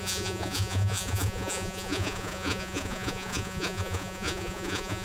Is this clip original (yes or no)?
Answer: no